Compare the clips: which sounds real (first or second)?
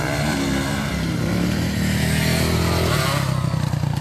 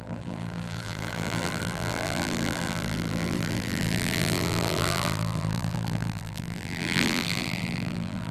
first